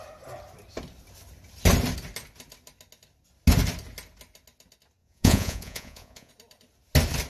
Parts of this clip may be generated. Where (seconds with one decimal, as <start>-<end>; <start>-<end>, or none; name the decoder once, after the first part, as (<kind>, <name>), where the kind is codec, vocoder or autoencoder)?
5.0-6.3 (vocoder, Vocos)